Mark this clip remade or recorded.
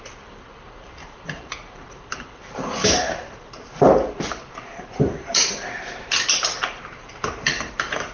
remade